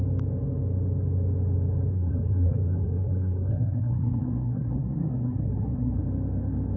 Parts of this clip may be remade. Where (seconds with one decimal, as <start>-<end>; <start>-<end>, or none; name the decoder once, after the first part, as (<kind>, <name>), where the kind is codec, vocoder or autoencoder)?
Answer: 1.9-6.0 (codec, SNAC)